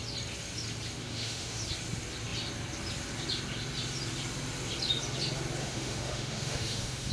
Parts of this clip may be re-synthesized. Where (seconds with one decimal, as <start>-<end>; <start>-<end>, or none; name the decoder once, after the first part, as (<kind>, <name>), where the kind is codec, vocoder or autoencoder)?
1.0-1.6 (autoencoder, DAC-VAE); 5.6-7.1